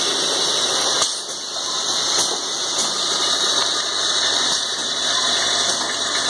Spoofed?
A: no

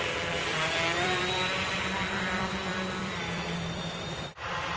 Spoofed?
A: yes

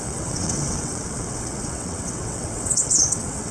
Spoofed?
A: yes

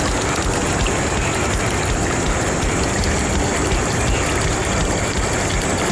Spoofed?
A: no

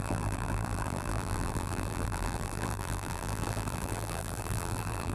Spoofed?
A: yes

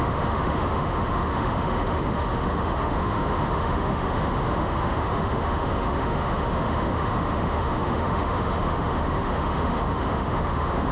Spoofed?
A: yes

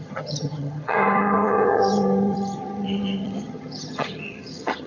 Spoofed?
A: yes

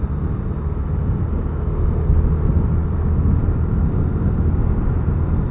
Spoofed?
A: no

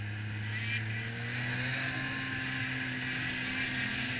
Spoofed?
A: no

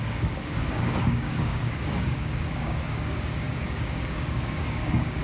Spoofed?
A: yes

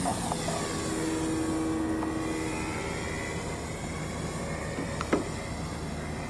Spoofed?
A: no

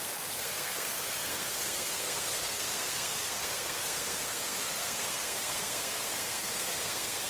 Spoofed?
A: yes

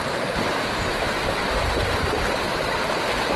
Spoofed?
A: no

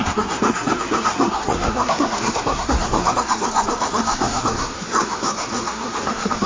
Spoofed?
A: yes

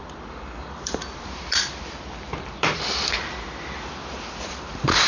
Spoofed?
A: yes